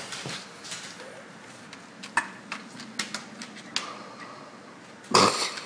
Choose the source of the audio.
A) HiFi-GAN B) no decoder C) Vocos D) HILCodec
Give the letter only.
B